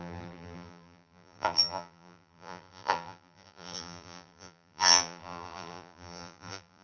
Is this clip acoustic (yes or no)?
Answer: no